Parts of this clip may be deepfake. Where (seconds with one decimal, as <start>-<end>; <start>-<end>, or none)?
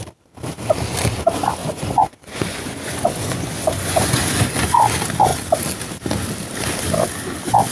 1.6-4.8